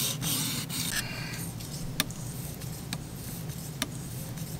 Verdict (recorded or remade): recorded